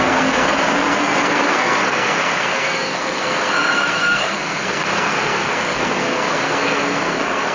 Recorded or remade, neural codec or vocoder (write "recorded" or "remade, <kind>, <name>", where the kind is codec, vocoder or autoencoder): remade, codec, SNAC